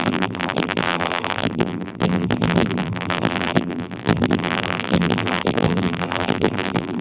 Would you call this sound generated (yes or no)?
yes